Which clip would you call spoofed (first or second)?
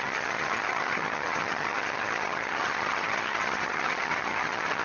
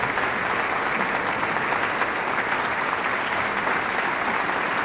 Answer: first